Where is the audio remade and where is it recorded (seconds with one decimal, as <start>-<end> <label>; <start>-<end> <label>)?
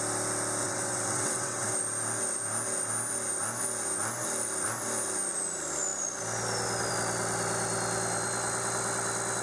0.0-0.6 recorded; 0.6-1.7 remade; 1.7-9.4 recorded